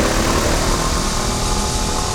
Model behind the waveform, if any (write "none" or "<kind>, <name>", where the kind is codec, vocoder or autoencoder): none